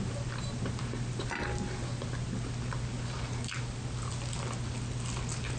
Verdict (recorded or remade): recorded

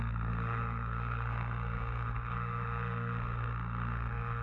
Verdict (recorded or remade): remade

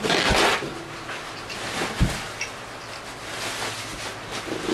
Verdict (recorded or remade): recorded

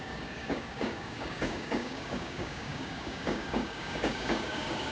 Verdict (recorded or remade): remade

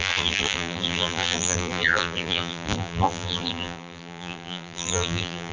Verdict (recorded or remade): remade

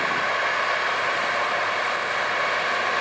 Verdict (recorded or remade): recorded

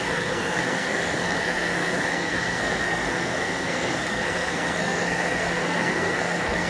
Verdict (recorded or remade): remade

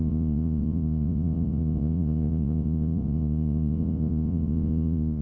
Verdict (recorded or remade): remade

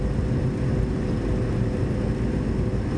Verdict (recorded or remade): recorded